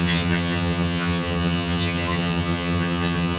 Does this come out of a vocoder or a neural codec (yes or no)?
yes